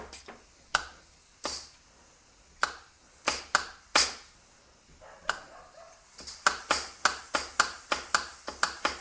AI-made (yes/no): no